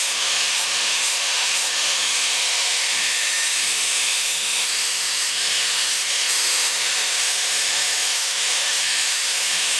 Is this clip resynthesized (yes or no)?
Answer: yes